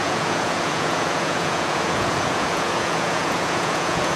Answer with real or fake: fake